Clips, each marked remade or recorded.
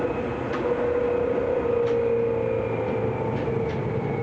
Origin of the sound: recorded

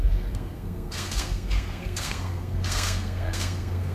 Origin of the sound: remade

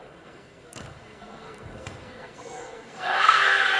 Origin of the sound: remade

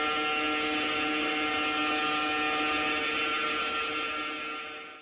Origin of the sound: recorded